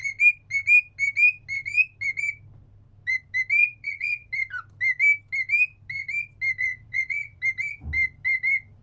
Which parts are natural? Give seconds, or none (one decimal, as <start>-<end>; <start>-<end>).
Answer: 0.0-3.6; 4.3-6.6; 7.4-8.8